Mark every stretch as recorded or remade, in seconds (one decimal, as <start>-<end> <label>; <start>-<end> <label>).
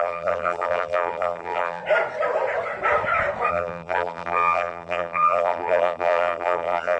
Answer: 0.0-1.8 remade; 1.8-3.5 recorded; 3.5-7.0 remade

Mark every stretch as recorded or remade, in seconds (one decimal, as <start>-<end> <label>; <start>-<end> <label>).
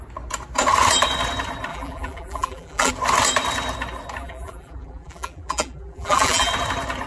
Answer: 0.0-1.7 recorded; 1.7-2.9 remade; 2.9-4.2 recorded; 4.2-6.5 remade; 6.5-7.1 recorded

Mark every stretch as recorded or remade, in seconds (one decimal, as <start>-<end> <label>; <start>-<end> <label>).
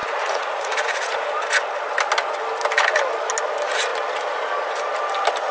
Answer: 0.0-1.2 remade; 1.2-5.5 recorded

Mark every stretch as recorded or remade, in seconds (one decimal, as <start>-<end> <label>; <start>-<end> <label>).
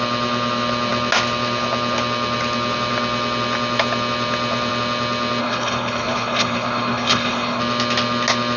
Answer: 0.0-5.4 recorded; 5.4-7.6 remade; 7.6-8.6 recorded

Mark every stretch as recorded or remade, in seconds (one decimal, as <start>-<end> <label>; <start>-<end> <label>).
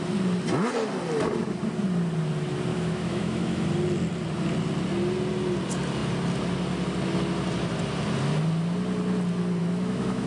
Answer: 0.0-2.7 recorded; 2.7-3.6 remade; 3.6-9.6 recorded; 9.6-10.3 remade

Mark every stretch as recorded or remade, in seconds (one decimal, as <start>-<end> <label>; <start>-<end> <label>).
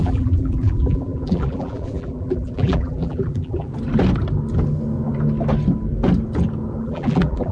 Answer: 0.0-3.7 remade; 3.7-6.8 recorded; 6.8-7.5 remade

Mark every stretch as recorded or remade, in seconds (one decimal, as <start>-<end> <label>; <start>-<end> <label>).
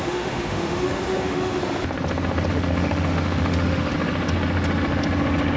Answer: 0.0-1.6 remade; 1.6-2.5 recorded; 2.5-3.9 remade; 3.9-5.6 recorded